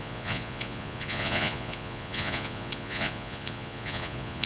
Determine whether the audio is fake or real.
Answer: fake